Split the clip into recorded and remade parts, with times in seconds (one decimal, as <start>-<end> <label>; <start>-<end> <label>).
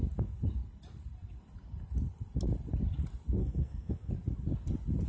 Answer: 0.0-3.4 recorded; 3.4-4.1 remade; 4.1-5.1 recorded